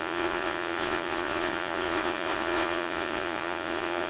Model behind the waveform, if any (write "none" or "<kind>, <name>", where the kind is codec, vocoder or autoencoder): vocoder, Vocos